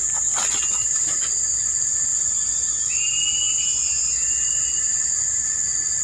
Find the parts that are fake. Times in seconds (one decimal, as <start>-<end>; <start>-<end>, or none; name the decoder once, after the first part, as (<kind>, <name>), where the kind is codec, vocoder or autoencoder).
none